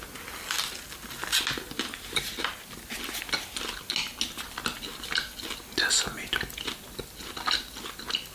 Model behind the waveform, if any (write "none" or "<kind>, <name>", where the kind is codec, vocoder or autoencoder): none